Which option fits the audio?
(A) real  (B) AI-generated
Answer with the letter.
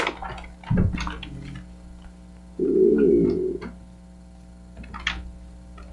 A